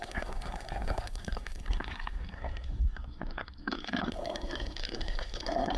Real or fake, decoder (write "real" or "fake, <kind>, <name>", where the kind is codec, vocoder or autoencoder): fake, codec, SNAC